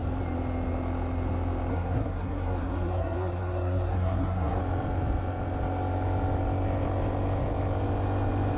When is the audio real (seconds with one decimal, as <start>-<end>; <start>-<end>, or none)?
0.0-1.7; 4.6-8.6